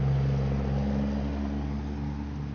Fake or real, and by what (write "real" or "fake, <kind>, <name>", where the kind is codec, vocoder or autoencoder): real